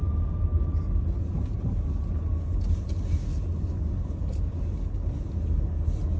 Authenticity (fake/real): real